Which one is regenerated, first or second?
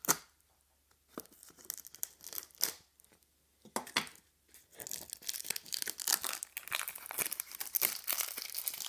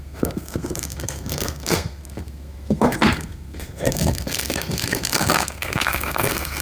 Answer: second